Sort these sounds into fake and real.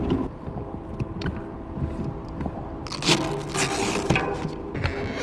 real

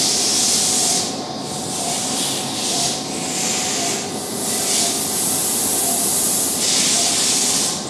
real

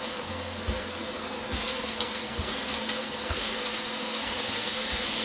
fake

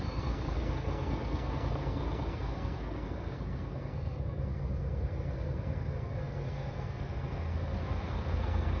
fake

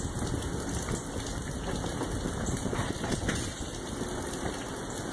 real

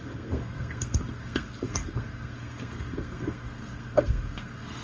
fake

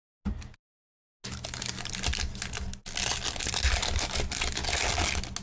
real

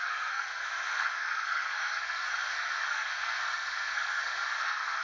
fake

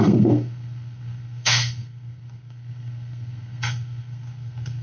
fake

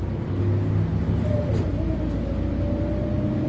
real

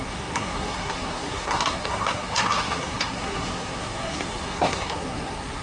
fake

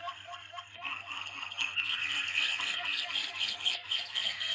fake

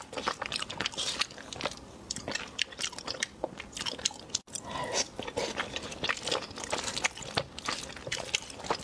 real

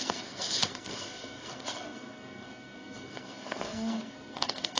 fake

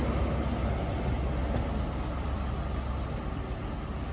real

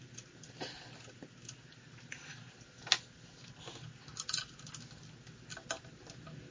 real